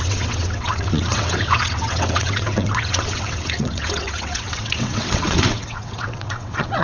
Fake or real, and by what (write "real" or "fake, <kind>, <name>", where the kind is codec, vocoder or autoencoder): fake, vocoder, WaveNeXt